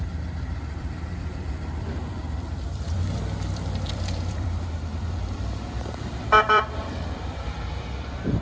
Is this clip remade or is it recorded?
remade